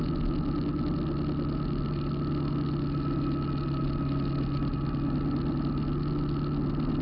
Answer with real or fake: real